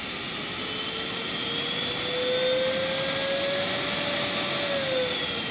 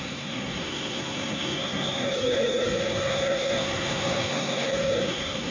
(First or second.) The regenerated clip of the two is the second